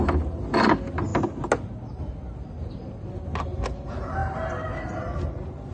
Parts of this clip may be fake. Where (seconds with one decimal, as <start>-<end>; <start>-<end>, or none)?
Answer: none